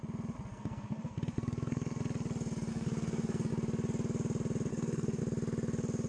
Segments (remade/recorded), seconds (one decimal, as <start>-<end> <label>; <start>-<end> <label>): 0.0-0.5 recorded; 0.5-2.0 remade; 2.0-2.7 recorded; 2.7-3.5 remade; 3.5-4.7 recorded; 4.7-5.2 remade; 5.2-6.1 recorded